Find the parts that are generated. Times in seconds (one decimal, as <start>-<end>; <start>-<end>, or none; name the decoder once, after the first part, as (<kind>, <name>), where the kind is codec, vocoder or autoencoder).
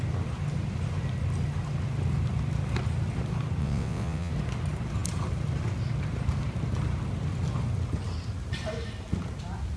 3.6-4.3 (vocoder, WaveNeXt)